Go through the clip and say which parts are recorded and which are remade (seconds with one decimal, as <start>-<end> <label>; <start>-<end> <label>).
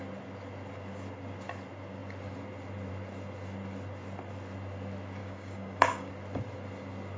0.0-5.2 recorded; 5.2-6.1 remade; 6.1-7.2 recorded